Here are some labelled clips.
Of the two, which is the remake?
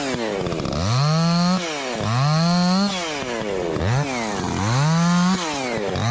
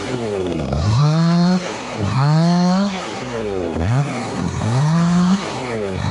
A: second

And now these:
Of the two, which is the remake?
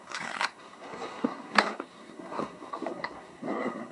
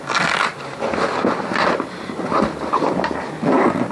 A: first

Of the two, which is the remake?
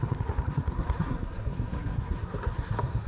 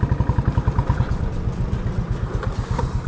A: first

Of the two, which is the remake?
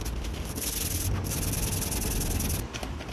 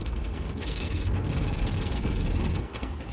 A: second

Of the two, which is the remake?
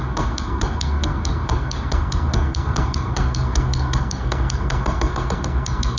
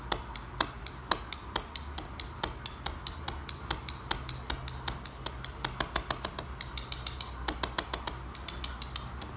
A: first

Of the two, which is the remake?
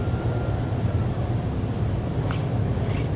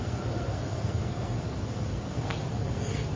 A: second